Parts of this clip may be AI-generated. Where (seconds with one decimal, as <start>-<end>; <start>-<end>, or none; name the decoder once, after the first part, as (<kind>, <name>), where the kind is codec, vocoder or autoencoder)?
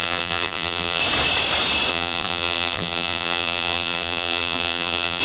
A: 0.0-1.0 (vocoder, BigVGAN v2); 1.9-5.2